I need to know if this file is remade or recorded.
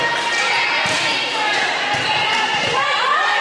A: remade